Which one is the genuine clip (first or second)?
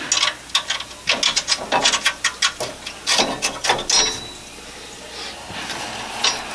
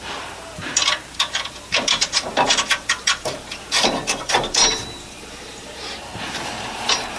first